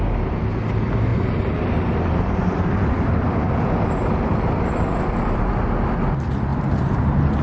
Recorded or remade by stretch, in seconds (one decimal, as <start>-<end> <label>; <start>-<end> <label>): 0.0-1.1 recorded; 1.1-5.5 remade; 5.5-6.5 recorded; 6.5-7.0 remade; 7.0-7.4 recorded